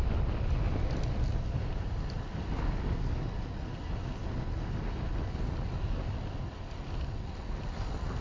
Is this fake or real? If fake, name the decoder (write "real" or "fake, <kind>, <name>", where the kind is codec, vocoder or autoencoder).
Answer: real